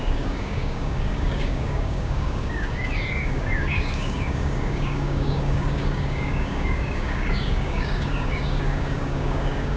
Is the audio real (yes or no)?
no